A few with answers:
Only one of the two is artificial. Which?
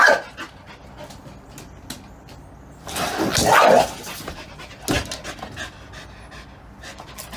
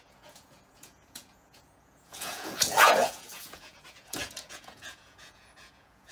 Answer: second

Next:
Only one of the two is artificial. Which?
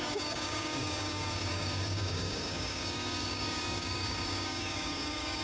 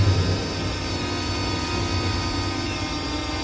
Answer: first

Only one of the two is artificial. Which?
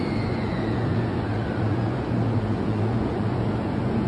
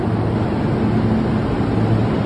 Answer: first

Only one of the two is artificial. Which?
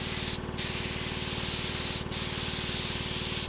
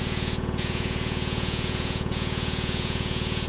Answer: second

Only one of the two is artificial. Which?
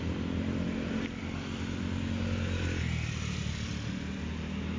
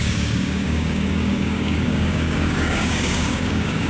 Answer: second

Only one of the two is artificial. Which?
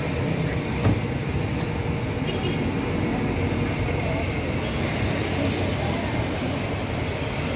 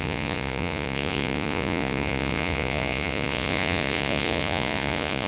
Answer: second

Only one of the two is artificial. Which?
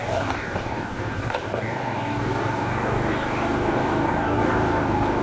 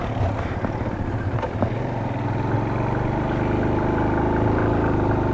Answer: first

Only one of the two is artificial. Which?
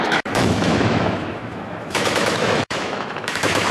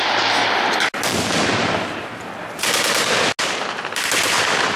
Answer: first